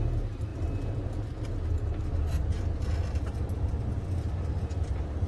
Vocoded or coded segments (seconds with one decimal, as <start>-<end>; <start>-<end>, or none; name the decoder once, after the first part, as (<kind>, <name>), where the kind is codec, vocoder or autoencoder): none